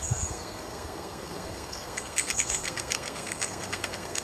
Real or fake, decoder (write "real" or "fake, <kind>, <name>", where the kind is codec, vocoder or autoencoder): fake, codec, SNAC